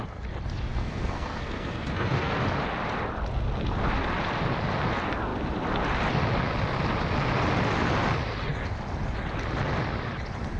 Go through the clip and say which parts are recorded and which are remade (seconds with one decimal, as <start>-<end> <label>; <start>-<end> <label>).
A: 0.0-0.8 recorded; 0.8-2.4 remade; 2.4-10.6 recorded